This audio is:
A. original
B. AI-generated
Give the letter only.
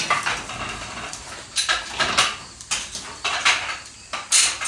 A